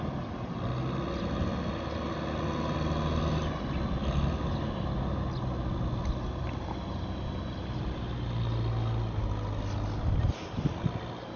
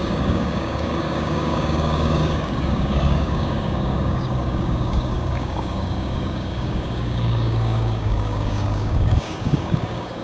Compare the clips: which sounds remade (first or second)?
second